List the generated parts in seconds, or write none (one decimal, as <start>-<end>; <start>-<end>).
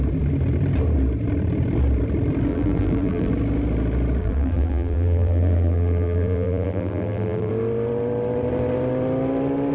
2.5-3.3; 4.2-7.5